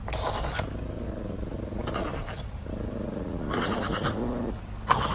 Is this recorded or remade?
recorded